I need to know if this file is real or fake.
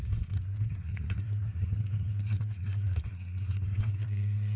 fake